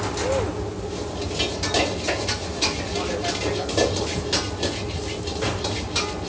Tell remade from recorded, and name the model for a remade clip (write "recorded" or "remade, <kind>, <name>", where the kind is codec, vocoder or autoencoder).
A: recorded